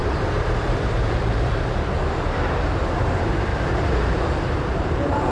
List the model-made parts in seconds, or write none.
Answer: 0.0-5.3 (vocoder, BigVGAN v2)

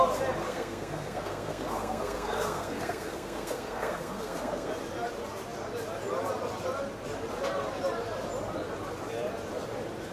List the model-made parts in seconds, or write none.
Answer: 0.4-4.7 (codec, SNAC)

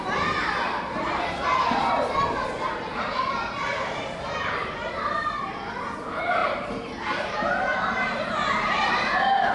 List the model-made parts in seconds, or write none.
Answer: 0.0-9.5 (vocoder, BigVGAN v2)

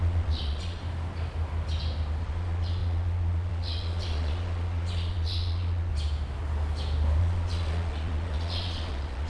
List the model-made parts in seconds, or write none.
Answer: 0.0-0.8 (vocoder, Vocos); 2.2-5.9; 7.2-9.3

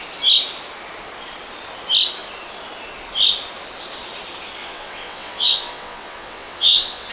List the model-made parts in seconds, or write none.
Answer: 4.6-7.1 (vocoder, WaveNeXt)

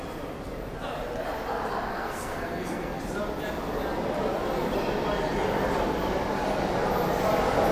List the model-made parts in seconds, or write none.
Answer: 1.9-3.0 (codec, SNAC)

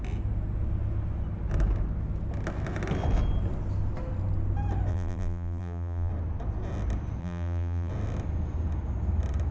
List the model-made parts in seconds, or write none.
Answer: 4.9-6.1 (vocoder, BigVGAN v2); 7.2-7.9

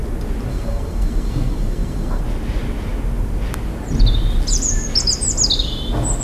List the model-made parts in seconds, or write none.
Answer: 0.5-2.2 (codec, SNAC)